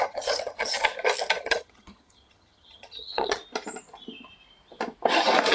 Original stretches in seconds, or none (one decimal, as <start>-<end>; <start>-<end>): 0.9-1.4; 3.4-5.5